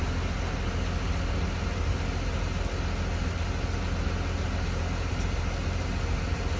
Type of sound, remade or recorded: recorded